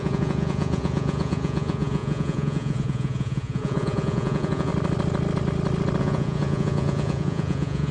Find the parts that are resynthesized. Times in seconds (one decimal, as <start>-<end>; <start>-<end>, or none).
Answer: 0.0-4.7; 6.0-7.9